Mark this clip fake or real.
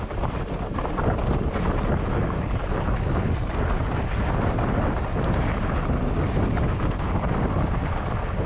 real